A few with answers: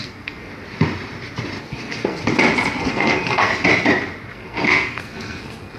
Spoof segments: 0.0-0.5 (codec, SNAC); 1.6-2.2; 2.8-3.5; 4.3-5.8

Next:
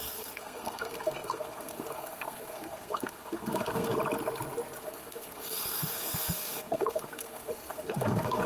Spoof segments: 0.0-3.9 (codec, SNAC); 4.8-8.5

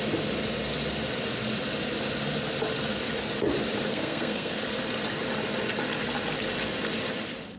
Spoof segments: 3.9-4.6 (codec, SNAC)

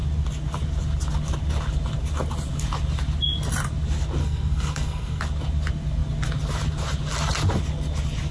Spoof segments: 4.2-5.2 (codec, SNAC)

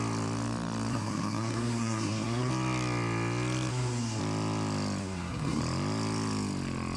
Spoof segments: 0.9-2.5 (codec, SNAC); 3.7-4.2; 5.0-5.6

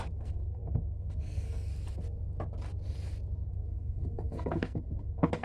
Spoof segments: 0.0-1.7 (codec, SNAC); 3.5-5.4

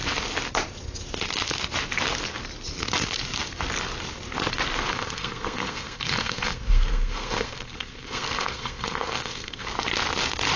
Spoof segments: 4.9-9.7 (codec, SNAC)